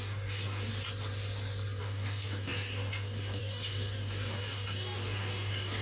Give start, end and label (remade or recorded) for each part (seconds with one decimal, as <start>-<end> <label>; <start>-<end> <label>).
0.0-0.7 remade; 0.7-1.8 recorded; 1.8-5.8 remade